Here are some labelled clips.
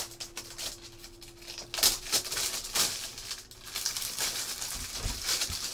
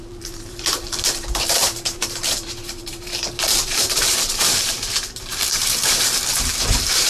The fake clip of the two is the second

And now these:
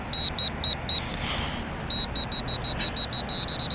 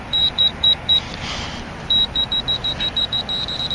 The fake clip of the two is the second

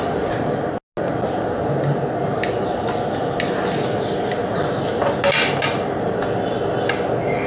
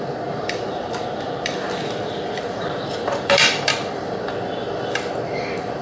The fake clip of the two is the second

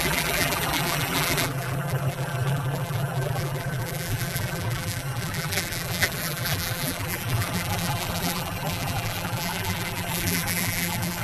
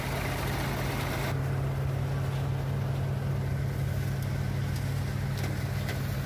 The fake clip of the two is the first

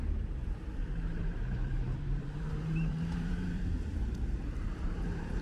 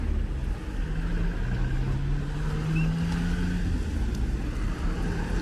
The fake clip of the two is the first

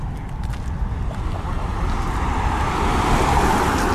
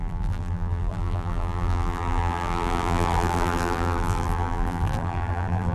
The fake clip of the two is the second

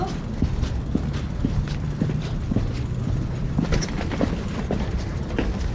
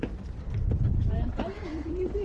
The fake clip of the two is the second